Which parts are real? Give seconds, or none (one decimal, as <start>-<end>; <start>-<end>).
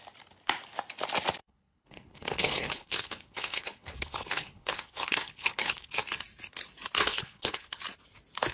0.0-1.4; 5.9-7.1; 7.8-8.5